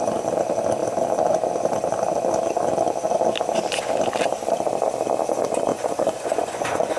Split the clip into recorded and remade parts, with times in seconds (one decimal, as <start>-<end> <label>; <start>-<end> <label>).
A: 0.0-5.7 recorded; 5.7-7.0 remade